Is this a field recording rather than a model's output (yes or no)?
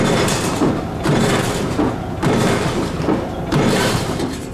no